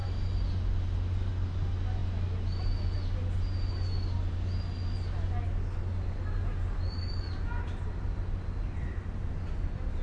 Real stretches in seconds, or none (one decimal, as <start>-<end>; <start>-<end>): 0.0-10.0